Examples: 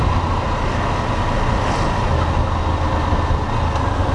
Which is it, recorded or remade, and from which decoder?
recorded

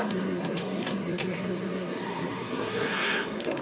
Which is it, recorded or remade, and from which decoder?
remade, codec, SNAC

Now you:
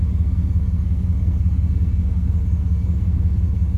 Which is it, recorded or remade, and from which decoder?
remade, codec, SNAC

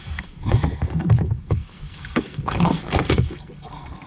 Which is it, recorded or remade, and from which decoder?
remade, codec, SNAC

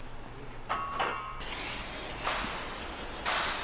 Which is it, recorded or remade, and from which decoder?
recorded